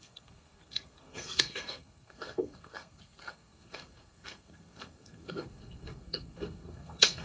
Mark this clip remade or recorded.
remade